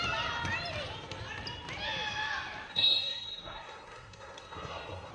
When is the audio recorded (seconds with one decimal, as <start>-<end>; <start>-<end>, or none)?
0.0-2.7

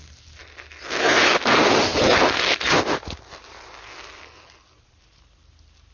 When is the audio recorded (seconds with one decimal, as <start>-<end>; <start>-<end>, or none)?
0.0-5.9

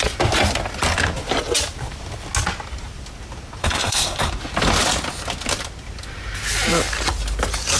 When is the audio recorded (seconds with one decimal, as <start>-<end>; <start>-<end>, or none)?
0.0-3.6; 4.3-7.8

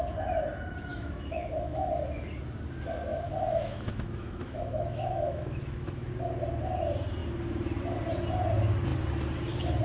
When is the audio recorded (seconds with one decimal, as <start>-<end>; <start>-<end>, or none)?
0.0-0.9; 1.9-3.1; 6.1-9.8

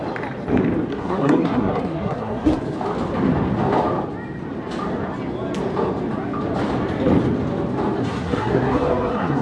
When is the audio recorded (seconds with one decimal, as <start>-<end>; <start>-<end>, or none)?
0.0-0.9; 2.6-8.0

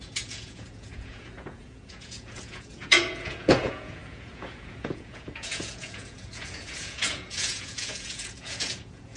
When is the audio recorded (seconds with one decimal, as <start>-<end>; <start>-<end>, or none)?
none